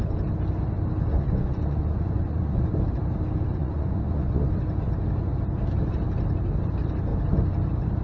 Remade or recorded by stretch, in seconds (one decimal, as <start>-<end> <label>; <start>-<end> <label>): 0.0-1.1 recorded; 1.1-2.7 remade; 2.7-3.6 recorded; 3.6-4.5 remade; 4.5-8.0 recorded